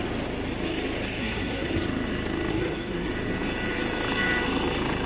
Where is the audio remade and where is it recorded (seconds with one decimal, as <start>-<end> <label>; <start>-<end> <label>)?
0.0-1.2 recorded; 1.2-1.7 remade; 1.7-2.5 recorded; 2.5-3.1 remade; 3.1-5.1 recorded